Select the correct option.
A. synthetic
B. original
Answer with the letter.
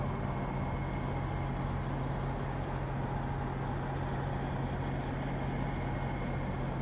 B